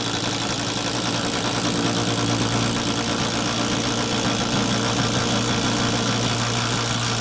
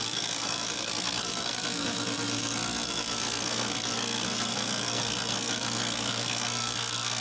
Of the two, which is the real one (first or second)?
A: first